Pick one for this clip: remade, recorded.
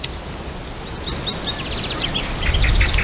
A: recorded